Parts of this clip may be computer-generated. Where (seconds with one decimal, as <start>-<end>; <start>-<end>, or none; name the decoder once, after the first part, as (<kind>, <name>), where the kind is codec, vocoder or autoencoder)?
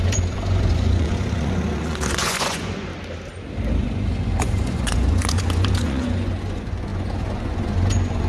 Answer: 0.0-2.9 (vocoder, Vocos); 3.8-8.3